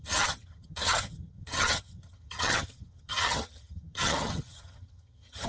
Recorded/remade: remade